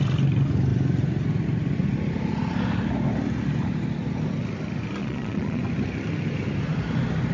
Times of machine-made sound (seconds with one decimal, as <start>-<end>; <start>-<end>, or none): 5.0-5.6